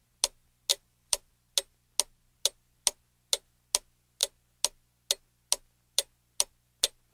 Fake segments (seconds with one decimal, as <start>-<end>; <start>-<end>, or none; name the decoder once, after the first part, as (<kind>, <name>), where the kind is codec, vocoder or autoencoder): 0.7-1.3 (vocoder, BigVGAN v2)